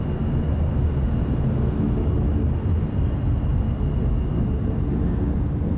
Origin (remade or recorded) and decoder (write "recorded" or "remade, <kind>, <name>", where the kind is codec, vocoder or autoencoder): recorded